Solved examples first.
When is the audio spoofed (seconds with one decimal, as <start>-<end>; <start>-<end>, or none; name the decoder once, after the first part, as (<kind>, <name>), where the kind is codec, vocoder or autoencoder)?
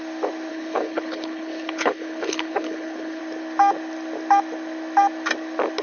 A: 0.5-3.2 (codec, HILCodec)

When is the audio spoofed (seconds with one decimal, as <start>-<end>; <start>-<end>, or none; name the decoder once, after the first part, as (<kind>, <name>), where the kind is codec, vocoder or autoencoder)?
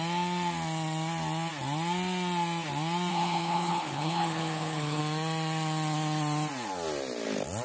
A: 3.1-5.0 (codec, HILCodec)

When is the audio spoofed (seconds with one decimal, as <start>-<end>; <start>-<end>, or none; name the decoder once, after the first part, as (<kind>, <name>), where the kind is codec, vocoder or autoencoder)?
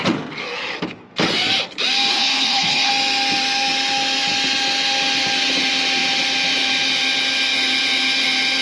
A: 2.1-2.9 (codec, HILCodec)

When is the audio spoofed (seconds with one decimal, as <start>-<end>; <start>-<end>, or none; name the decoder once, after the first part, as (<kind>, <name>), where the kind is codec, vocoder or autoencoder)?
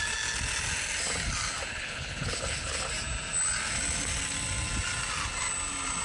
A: 1.7-2.9 (codec, HILCodec)